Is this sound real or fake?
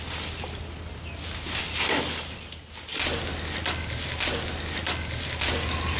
real